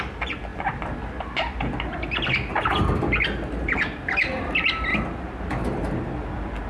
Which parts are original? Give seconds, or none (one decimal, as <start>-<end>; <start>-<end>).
0.0-6.7